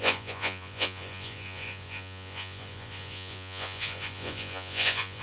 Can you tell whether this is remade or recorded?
remade